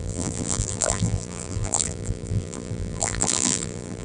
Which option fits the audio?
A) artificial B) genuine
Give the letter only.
A